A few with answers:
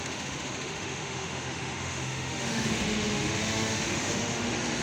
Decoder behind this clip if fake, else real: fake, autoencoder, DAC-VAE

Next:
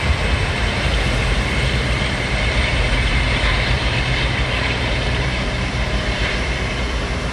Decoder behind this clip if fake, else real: fake, vocoder, BigVGAN v2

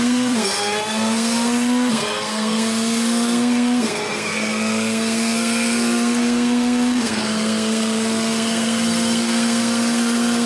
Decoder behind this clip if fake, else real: fake, codec, SNAC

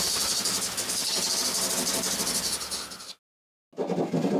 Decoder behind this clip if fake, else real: real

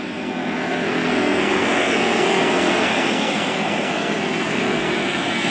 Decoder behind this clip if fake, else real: fake, codec, SNAC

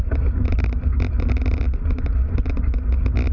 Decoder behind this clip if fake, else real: real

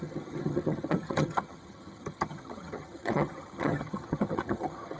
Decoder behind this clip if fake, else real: fake, vocoder, HiFi-GAN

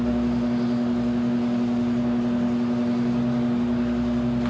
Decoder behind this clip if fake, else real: real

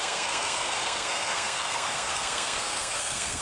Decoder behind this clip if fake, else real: fake, codec, SNAC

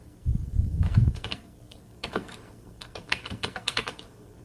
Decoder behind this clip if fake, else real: fake, codec, SNAC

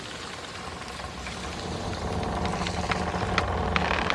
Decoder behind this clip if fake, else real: real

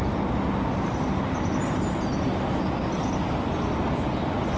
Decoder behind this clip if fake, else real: real